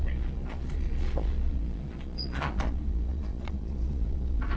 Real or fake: fake